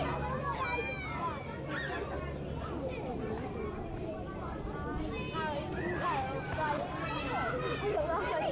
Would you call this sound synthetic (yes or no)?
no